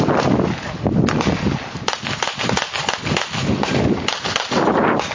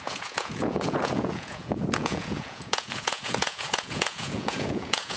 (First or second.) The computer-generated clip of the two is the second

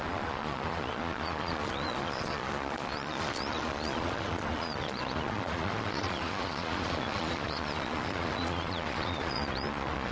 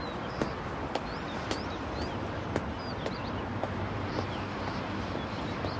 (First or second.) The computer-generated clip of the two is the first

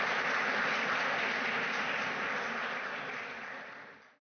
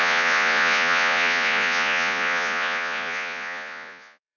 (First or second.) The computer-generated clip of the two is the second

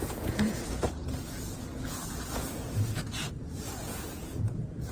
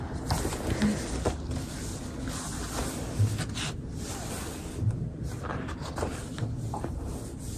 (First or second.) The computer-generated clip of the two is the first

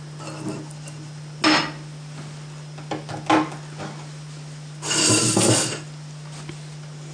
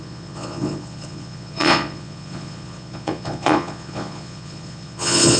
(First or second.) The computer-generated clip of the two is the second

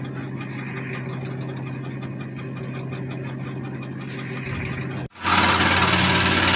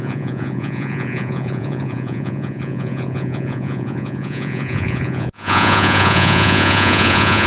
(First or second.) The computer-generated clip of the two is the second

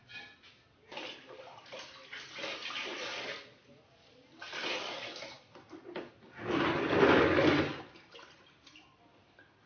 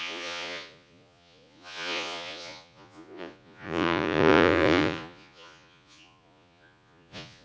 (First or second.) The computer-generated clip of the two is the second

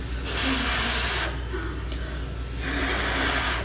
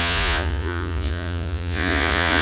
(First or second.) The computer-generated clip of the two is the second